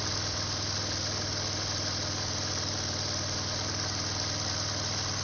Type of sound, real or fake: real